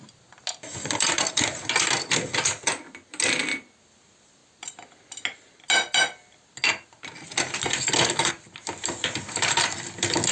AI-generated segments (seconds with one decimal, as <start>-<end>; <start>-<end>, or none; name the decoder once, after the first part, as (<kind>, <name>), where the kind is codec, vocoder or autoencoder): none